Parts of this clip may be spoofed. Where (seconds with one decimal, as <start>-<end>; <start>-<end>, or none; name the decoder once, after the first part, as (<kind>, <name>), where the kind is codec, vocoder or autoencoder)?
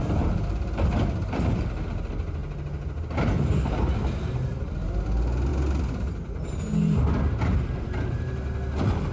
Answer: none